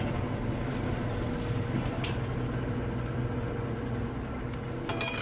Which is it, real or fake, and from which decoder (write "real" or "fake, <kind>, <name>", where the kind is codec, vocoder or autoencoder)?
real